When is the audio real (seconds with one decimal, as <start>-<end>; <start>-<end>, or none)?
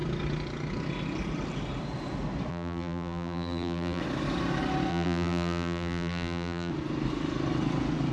0.0-2.5; 4.0-4.9; 6.7-8.1